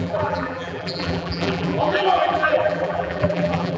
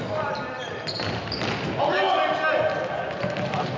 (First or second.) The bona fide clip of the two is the second